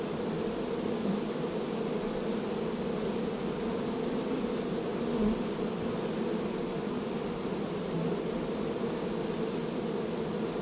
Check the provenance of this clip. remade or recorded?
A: recorded